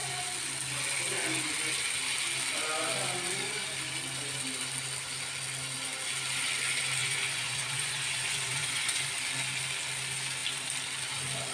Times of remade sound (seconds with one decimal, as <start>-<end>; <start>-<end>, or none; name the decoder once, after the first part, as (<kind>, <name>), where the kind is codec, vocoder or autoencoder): 7.0-9.1 (vocoder, Vocos)